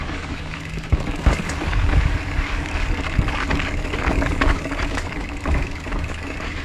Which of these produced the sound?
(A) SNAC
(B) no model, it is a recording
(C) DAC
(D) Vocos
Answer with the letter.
C